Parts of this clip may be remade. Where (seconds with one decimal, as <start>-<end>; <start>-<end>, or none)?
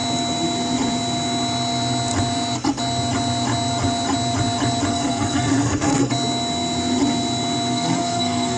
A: 4.9-6.1; 7.7-8.6